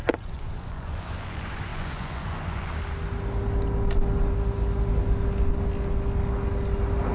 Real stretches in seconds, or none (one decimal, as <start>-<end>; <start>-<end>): 2.7-7.1